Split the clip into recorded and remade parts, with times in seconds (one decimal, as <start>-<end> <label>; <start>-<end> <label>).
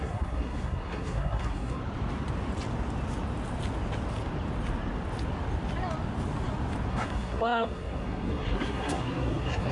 0.0-1.8 remade; 1.8-6.9 recorded; 6.9-9.7 remade